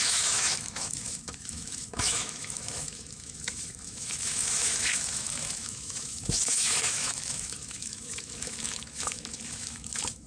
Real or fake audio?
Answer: fake